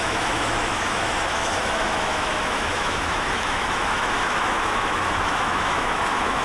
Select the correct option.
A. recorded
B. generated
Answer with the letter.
B